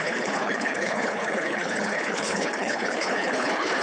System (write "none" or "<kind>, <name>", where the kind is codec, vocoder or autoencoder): codec, HILCodec